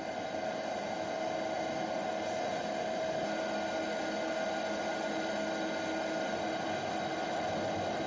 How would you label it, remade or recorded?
recorded